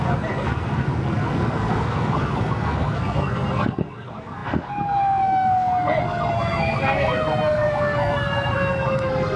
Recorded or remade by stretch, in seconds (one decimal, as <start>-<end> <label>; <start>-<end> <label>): 0.0-9.4 remade